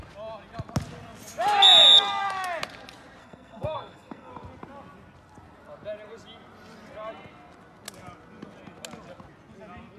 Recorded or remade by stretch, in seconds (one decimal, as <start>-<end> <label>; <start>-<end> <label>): 0.0-3.2 recorded; 3.2-4.3 remade; 4.3-10.0 recorded